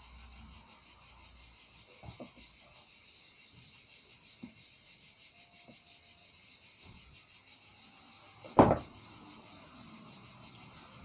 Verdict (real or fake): real